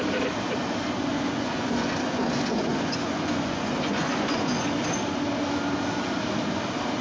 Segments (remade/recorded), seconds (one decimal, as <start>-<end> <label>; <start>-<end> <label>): 0.0-1.1 recorded; 1.1-4.6 remade; 4.6-7.0 recorded